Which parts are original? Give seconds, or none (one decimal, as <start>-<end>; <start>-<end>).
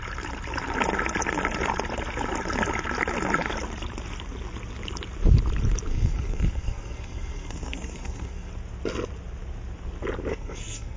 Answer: 0.0-5.9; 8.5-10.3